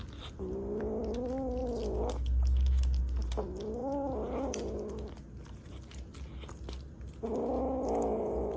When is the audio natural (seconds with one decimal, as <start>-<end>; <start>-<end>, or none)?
0.0-8.6